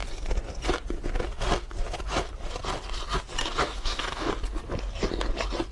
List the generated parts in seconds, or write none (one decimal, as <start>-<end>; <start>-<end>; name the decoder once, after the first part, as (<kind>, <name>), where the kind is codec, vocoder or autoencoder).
3.4-4.3 (codec, DAC)

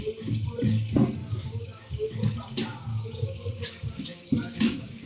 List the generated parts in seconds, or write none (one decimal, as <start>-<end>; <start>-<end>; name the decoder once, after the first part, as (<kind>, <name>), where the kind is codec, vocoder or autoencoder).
1.2-2.1 (codec, DAC); 2.9-5.1

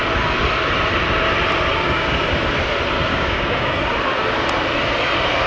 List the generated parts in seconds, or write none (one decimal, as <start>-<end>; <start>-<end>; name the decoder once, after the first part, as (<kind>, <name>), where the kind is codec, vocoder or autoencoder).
1.7-2.2 (codec, DAC); 3.1-3.8

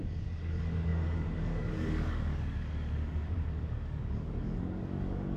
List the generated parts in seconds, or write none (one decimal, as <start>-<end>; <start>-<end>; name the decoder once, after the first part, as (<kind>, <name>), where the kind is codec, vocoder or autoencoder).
0.0-5.4 (codec, DAC)

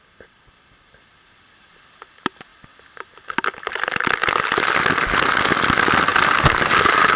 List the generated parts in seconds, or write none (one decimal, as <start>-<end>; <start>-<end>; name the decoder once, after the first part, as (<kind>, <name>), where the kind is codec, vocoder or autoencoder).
none

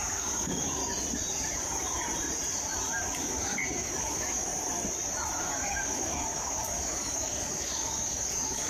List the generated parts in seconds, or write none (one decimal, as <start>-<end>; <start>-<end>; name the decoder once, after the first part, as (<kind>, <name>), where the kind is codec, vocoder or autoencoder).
0.0-0.8 (codec, DAC); 3.2-4.5; 5.4-8.7